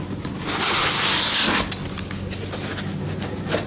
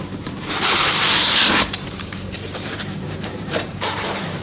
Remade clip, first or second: second